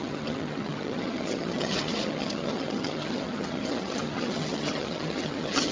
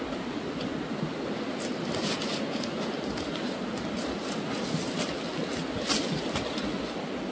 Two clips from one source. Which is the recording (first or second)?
second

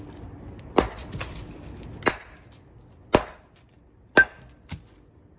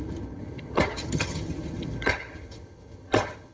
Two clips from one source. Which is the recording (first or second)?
first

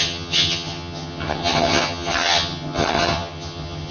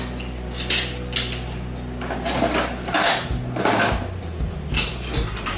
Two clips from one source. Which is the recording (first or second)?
second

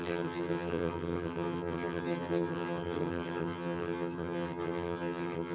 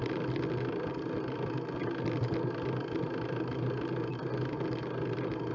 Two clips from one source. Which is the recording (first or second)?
second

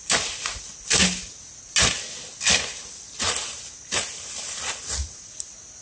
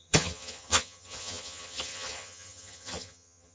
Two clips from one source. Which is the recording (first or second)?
first